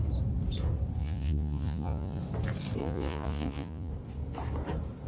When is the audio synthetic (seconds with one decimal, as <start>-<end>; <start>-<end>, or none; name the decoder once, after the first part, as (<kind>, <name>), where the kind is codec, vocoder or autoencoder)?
1.0-2.2 (vocoder, Vocos); 2.8-3.9

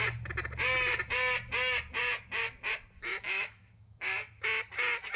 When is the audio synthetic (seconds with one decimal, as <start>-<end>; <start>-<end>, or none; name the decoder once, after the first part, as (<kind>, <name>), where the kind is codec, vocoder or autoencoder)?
3.1-4.0 (autoencoder, DAC-VAE)

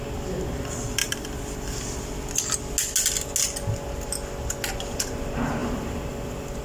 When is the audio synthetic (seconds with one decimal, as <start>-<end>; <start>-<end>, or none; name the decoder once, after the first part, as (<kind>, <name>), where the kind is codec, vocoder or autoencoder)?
1.0-1.8 (vocoder, BigVGAN v2); 5.6-6.6

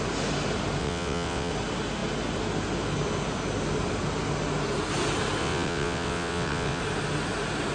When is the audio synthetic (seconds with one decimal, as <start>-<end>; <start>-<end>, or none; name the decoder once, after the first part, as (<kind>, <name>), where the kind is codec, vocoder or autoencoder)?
0.8-1.5 (vocoder, WaveNeXt); 5.4-6.8

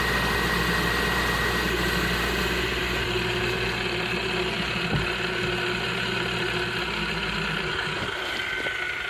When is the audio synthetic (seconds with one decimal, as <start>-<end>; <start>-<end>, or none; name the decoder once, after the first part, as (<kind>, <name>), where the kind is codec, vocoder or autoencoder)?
none